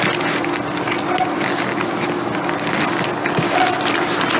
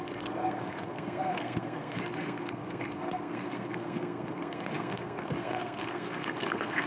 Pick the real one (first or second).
first